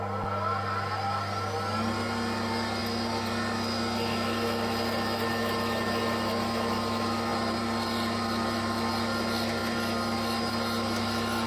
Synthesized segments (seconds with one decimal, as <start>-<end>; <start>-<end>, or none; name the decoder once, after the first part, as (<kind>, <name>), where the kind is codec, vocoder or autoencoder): 7.3-8.9 (vocoder, BigVGAN v2)